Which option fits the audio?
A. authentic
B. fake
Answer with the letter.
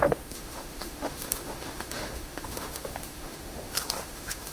B